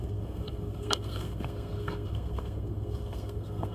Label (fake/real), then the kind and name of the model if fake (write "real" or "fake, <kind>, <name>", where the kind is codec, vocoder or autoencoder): fake, codec, SNAC